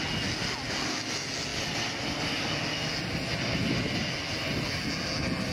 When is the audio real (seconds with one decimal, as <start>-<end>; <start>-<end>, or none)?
0.0-5.5